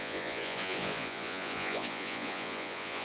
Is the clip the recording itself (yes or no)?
no